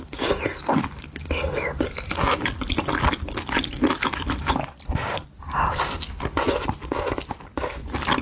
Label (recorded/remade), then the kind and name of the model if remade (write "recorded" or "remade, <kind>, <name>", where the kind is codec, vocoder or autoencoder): recorded